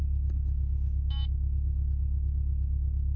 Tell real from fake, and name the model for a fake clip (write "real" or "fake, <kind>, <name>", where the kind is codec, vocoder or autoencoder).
real